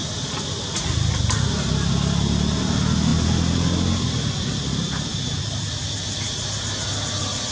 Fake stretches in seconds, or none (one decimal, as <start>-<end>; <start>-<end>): none